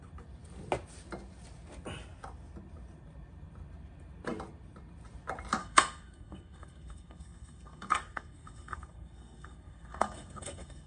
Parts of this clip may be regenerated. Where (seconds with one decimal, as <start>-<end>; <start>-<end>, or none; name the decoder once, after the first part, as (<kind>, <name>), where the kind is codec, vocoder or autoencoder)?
5.6-10.9 (codec, SNAC)